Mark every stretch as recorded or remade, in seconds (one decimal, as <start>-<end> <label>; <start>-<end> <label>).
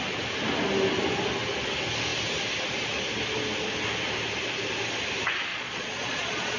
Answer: 0.0-5.5 recorded; 5.5-6.6 remade